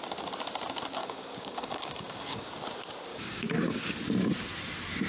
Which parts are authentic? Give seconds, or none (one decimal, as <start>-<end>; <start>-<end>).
0.0-1.0; 2.5-3.1; 3.9-5.1